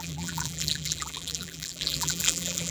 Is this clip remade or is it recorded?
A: remade